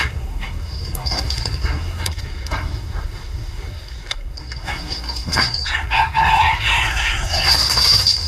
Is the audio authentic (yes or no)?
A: no